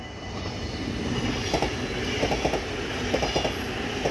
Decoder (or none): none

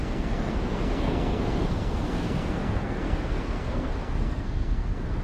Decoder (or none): codec, SNAC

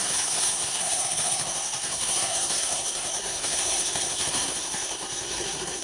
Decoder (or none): codec, SNAC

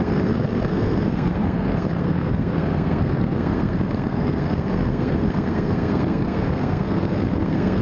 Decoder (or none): codec, SNAC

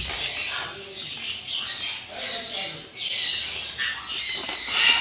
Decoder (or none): none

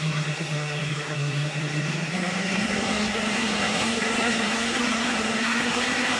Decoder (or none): codec, SNAC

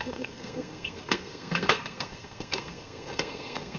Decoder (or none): codec, SNAC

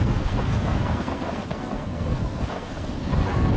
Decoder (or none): codec, SNAC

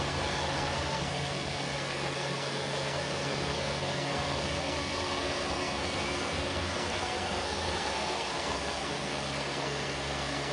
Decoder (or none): codec, SNAC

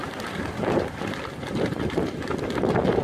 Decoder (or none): none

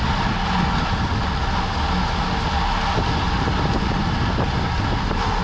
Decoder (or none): none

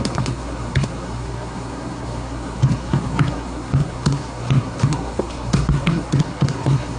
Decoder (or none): codec, SNAC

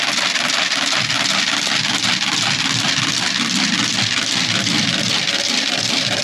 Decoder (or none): none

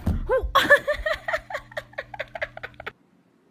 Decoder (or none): none